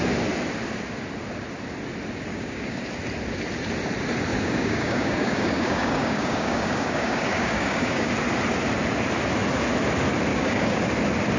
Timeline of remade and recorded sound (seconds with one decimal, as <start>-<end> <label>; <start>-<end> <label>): 0.0-2.3 recorded; 2.3-2.8 remade; 2.8-4.3 recorded; 4.3-8.1 remade; 8.1-10.3 recorded; 10.3-10.8 remade; 10.8-11.4 recorded